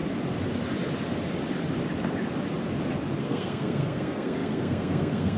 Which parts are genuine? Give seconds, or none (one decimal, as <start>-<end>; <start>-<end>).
0.0-3.2